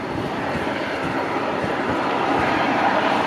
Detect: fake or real fake